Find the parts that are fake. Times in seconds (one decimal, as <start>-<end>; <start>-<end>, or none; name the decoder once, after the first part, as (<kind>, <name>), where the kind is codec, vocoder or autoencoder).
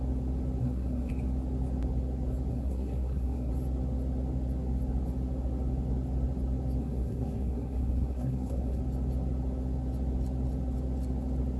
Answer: 0.6-1.1 (codec, SNAC); 2.5-3.5; 6.8-8.8